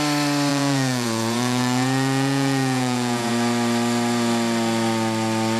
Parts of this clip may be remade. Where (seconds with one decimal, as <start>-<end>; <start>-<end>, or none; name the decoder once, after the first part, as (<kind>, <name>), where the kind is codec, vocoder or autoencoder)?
0.5-3.3 (vocoder, Vocos)